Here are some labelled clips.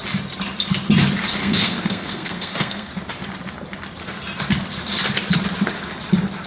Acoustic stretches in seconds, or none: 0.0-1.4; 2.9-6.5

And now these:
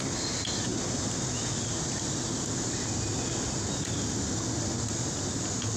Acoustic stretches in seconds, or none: 0.0-5.8

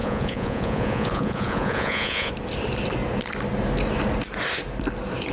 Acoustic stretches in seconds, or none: 2.3-5.3